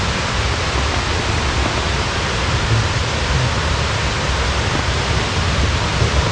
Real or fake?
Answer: real